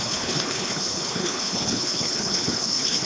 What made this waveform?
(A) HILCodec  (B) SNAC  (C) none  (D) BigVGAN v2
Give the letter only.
A